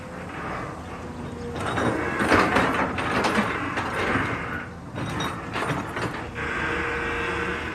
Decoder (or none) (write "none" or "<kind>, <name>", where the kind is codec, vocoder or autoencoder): none